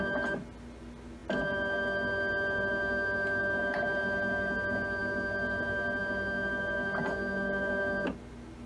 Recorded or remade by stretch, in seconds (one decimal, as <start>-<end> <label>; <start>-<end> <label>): 0.0-8.7 recorded